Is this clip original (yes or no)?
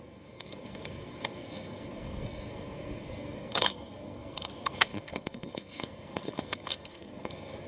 no